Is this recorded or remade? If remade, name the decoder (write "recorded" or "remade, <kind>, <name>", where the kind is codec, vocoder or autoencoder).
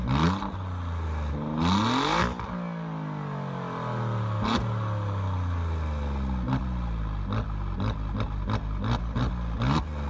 recorded